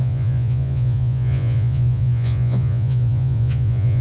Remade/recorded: remade